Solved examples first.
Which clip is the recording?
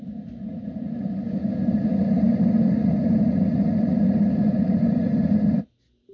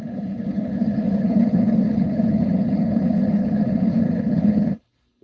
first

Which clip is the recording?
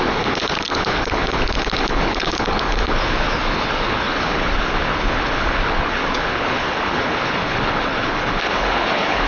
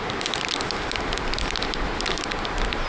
second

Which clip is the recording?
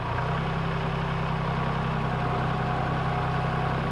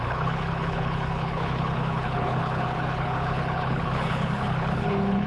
first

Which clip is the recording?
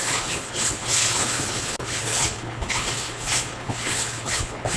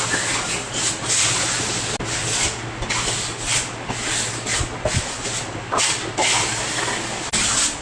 second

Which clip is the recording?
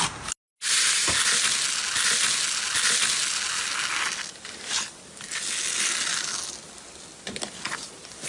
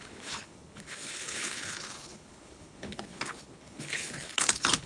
first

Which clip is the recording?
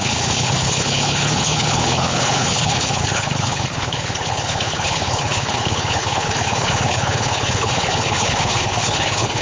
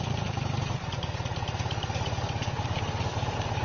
second